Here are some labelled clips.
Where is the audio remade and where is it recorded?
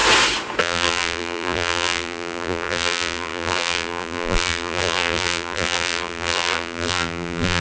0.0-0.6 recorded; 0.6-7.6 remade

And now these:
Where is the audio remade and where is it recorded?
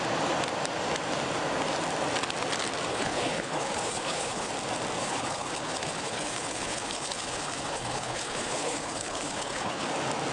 0.0-2.9 recorded; 2.9-4.5 remade; 4.5-5.0 recorded; 5.0-9.9 remade; 9.9-10.3 recorded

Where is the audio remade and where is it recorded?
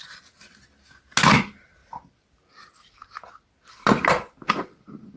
0.0-5.2 recorded